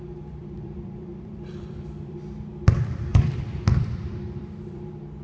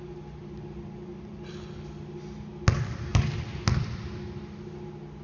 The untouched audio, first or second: second